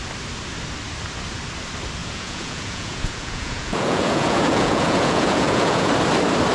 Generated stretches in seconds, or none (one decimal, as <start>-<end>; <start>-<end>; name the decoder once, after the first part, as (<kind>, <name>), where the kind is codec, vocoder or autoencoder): 2.0-5.9 (vocoder, Vocos)